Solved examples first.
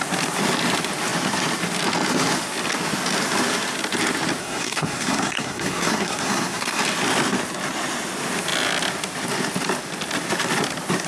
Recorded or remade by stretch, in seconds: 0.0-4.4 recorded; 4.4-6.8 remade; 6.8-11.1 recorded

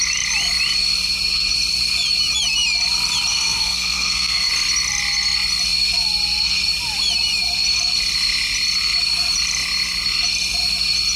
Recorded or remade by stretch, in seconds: 0.0-3.3 recorded; 3.3-4.5 remade; 4.5-11.2 recorded

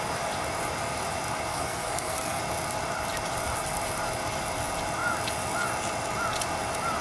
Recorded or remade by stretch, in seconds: 0.0-1.5 recorded; 1.5-2.4 remade; 2.4-7.0 recorded

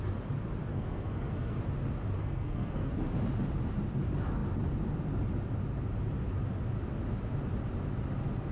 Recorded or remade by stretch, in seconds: 0.0-0.7 recorded; 0.7-1.6 remade; 1.6-2.2 recorded; 2.2-2.9 remade; 2.9-8.5 recorded

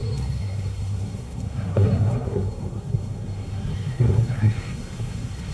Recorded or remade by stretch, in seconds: 0.0-5.5 remade